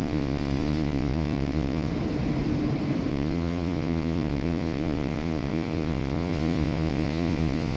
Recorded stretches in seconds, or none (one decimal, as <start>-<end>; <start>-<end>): 1.9-3.1